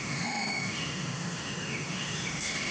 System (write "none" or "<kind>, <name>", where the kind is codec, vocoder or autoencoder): autoencoder, DAC-VAE